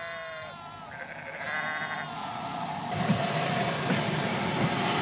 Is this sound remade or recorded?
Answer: recorded